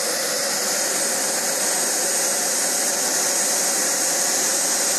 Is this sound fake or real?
real